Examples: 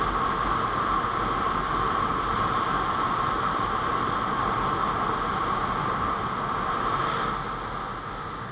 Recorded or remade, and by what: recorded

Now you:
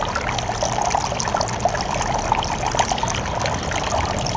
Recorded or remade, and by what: recorded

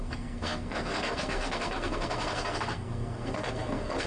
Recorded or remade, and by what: remade, codec, SNAC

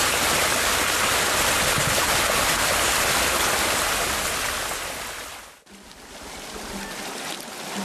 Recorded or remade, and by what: recorded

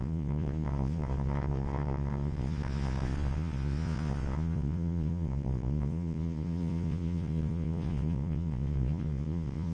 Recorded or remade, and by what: remade, vocoder, Vocos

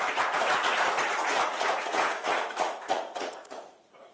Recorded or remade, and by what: remade, vocoder, Vocos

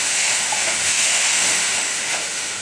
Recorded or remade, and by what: remade, autoencoder, DAC-VAE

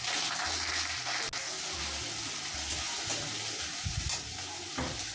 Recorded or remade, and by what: recorded